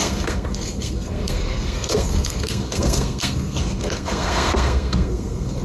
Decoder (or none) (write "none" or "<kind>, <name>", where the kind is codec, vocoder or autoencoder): codec, SNAC